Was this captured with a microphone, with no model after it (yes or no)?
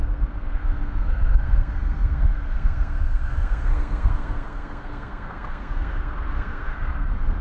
no